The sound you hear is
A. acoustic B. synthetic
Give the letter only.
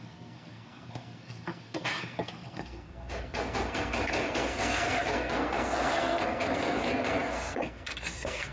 B